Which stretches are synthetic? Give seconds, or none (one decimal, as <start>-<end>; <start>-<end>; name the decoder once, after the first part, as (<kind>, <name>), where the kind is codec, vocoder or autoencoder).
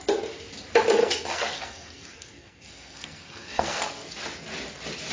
1.0-4.1 (codec, SNAC)